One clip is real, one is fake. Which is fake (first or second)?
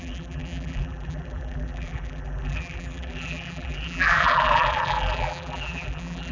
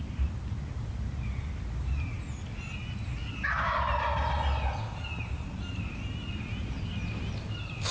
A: first